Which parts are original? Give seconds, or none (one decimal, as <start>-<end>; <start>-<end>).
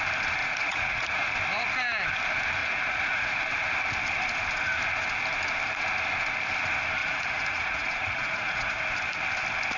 0.0-0.4; 1.3-2.6; 3.4-7.0; 8.8-9.8